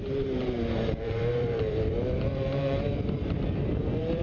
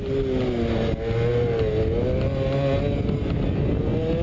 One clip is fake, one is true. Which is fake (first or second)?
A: first